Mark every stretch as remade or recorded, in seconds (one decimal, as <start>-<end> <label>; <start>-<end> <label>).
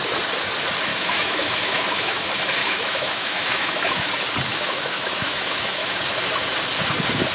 0.0-0.9 recorded; 0.9-2.2 remade; 2.2-2.6 recorded; 2.6-4.1 remade; 4.1-4.5 recorded; 4.5-6.0 remade; 6.0-7.3 recorded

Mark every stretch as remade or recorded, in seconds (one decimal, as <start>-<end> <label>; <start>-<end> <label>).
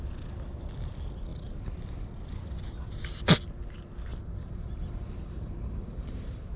0.0-4.1 recorded; 4.1-6.6 remade